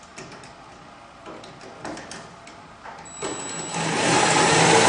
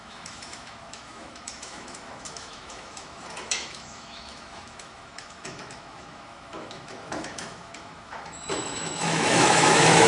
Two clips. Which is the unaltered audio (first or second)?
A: first